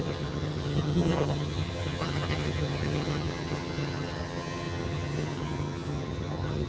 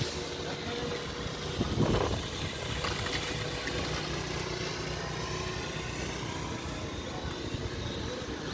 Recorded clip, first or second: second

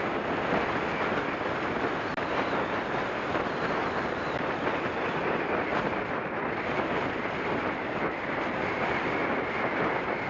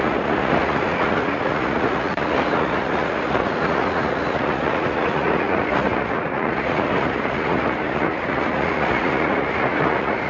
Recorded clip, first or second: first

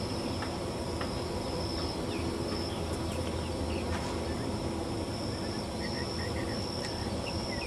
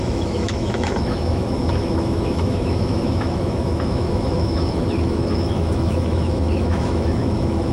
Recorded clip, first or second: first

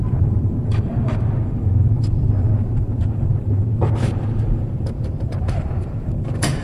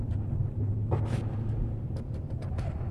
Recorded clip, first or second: second